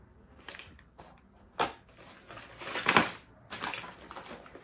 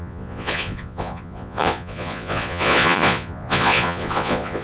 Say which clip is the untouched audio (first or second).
first